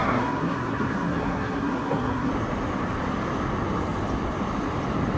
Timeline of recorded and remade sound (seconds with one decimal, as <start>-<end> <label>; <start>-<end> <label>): 0.0-2.3 remade; 2.3-5.2 recorded

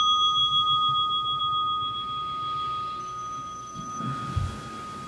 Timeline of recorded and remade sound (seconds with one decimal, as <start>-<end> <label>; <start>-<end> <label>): 0.0-3.0 recorded; 3.0-4.0 remade; 4.0-5.1 recorded

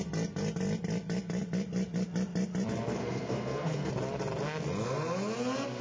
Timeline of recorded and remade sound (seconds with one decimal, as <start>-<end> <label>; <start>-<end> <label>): 0.0-3.0 recorded; 3.0-3.9 remade; 3.9-5.8 recorded

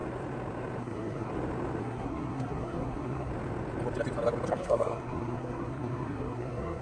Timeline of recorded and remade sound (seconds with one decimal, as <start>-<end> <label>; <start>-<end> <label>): 0.0-0.8 recorded; 0.8-1.3 remade; 1.3-1.8 recorded; 1.8-3.3 remade; 3.3-4.5 recorded; 4.5-6.8 remade

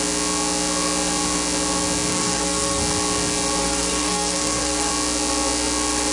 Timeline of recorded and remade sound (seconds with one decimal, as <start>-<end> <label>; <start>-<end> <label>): 0.0-2.1 recorded; 2.1-2.8 remade; 2.8-3.6 recorded; 3.6-4.9 remade; 4.9-6.1 recorded

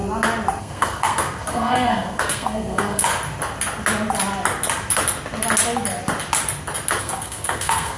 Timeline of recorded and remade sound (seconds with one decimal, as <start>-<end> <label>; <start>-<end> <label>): 0.0-0.6 recorded; 0.6-3.1 remade; 3.1-7.0 recorded; 7.0-8.0 remade

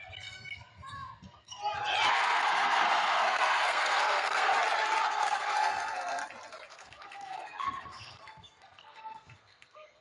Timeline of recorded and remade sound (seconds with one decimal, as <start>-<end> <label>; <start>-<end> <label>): 0.0-1.6 remade; 1.6-2.1 recorded; 2.1-4.5 remade; 4.5-5.0 recorded; 5.0-6.2 remade; 6.2-6.7 recorded; 6.7-10.0 remade